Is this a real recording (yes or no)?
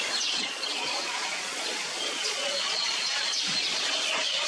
no